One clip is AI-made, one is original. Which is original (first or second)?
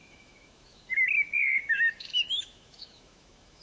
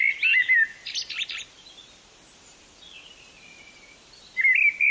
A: second